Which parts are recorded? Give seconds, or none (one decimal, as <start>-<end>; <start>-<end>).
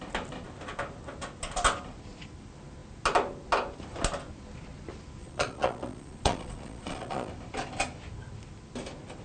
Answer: 0.0-5.2; 7.3-9.2